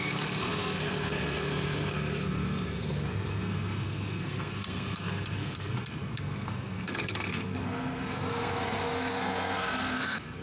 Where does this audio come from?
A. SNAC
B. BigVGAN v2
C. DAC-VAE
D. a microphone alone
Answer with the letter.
A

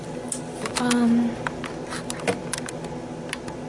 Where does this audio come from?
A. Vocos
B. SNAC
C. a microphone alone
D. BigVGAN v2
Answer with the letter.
C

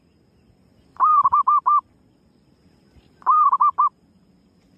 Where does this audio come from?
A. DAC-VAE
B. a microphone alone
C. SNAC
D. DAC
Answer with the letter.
B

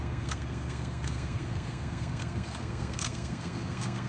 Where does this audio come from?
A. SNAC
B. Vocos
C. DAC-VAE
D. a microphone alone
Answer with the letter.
A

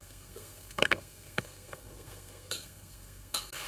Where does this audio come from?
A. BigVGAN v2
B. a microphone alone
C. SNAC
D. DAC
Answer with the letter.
C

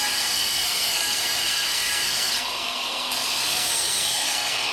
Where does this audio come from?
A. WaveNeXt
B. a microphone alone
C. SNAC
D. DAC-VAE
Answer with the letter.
C